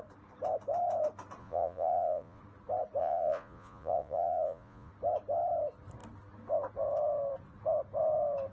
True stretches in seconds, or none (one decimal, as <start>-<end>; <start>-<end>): 0.0-1.4; 2.4-3.0; 4.9-8.5